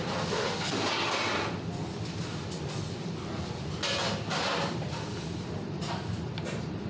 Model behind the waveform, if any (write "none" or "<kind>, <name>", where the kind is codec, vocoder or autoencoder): none